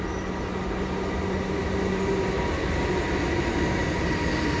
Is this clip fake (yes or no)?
no